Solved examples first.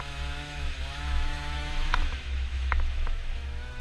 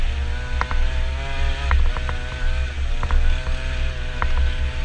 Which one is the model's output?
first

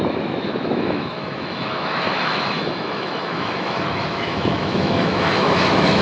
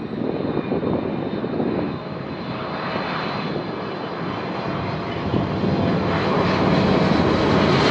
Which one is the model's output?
first